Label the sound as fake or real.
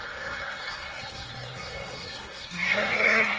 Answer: fake